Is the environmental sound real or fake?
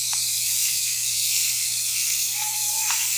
fake